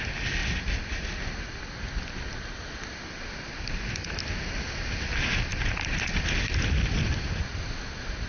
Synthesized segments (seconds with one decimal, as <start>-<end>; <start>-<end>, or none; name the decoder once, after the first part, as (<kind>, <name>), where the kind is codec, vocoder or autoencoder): none